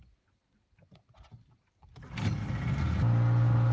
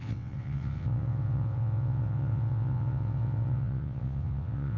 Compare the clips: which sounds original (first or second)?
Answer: first